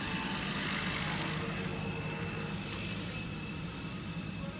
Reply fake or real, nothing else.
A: real